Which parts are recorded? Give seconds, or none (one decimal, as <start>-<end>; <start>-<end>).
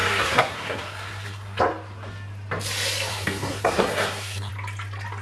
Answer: 1.6-3.1; 4.5-5.2